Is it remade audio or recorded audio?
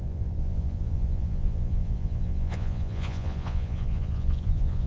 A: remade